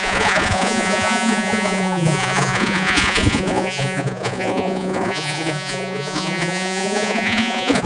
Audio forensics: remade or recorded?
remade